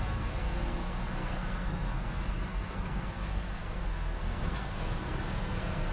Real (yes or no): no